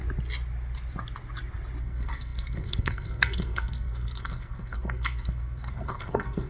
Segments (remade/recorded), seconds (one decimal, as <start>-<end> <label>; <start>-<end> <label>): 0.0-1.8 recorded; 1.8-6.5 remade